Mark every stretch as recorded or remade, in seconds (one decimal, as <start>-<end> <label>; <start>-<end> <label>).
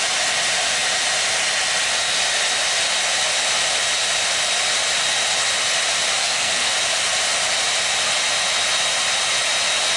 0.0-6.2 recorded; 6.2-6.7 remade; 6.7-10.0 recorded